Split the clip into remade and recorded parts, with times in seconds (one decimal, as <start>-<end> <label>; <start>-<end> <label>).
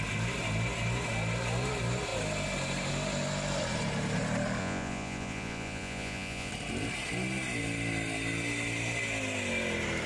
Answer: 0.0-4.6 recorded; 4.6-6.5 remade; 6.5-10.1 recorded